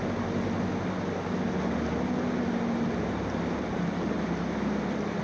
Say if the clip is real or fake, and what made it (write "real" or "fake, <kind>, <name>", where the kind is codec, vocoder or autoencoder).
real